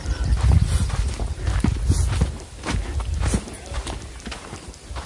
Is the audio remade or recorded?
recorded